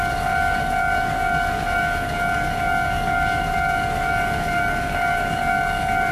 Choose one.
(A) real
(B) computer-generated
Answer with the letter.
B